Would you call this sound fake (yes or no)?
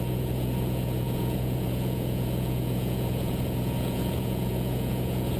yes